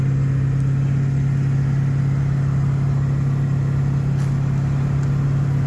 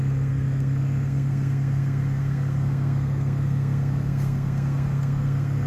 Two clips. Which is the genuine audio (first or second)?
first